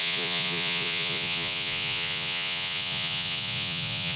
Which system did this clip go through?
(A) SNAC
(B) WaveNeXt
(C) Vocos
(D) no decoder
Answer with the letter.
C